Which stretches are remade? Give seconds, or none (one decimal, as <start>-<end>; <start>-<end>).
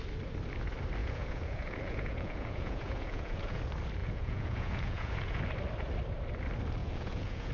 1.0-3.6; 4.0-5.4; 6.8-7.5